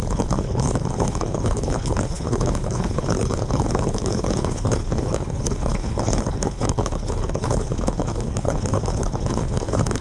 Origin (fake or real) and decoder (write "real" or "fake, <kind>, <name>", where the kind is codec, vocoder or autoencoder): fake, codec, HILCodec